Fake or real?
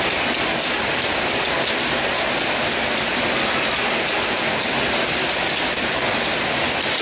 real